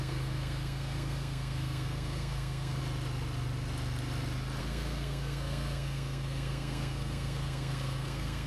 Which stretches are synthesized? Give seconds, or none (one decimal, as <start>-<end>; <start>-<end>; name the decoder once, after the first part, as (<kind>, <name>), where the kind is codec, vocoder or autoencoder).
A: 0.0-2.8 (codec, SNAC); 4.6-8.5